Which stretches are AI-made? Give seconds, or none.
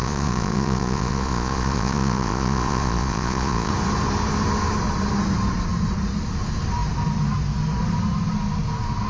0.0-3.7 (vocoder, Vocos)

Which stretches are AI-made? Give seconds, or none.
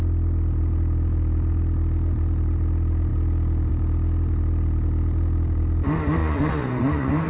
6.2-7.3 (vocoder, Vocos)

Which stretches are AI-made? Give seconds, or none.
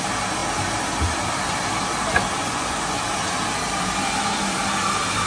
2.4-3.0 (vocoder, Vocos)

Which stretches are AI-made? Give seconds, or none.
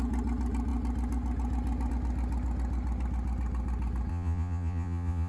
4.1-5.3 (vocoder, Vocos)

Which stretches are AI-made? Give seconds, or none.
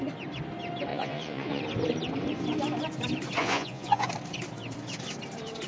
0.9-1.6 (vocoder, Vocos); 3.4-4.1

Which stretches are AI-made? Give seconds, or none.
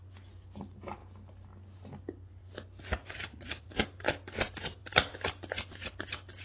3.0-3.8 (vocoder, Vocos)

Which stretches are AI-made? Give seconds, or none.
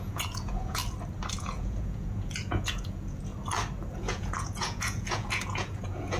0.0-0.8 (vocoder, Vocos); 1.3-3.3; 3.9-6.2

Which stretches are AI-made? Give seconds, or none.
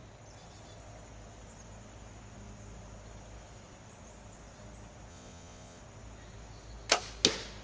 5.1-5.8 (vocoder, Vocos)